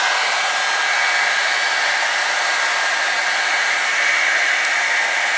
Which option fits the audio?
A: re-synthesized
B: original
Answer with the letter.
B